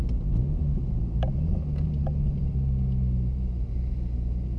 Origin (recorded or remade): recorded